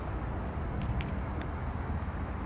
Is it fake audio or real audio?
real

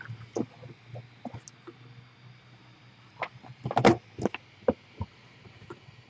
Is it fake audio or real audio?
real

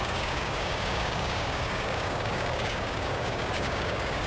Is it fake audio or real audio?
fake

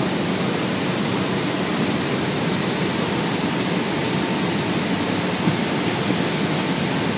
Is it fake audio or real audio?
real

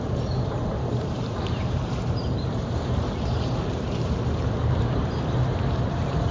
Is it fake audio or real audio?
fake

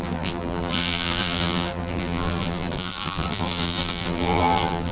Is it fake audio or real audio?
fake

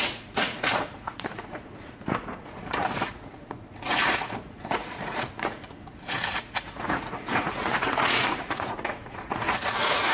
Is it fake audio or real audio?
fake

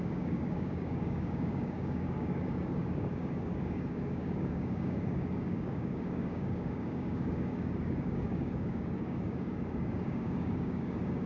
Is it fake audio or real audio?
fake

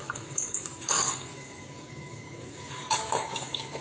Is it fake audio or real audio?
fake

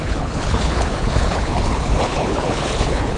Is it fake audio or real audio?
fake